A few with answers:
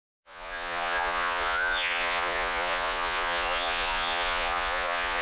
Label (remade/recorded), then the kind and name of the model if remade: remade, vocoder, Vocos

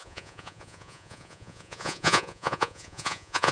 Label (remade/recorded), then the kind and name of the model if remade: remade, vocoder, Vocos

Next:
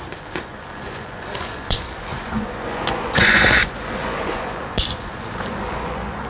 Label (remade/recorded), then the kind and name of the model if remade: remade, vocoder, Vocos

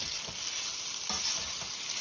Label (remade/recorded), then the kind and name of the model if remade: recorded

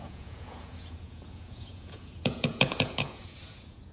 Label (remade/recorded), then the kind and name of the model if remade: remade, vocoder, Vocos